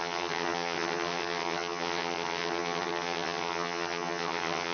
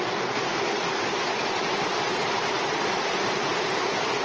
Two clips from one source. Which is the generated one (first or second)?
first